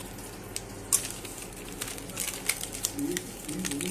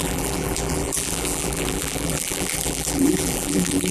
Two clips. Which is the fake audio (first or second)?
second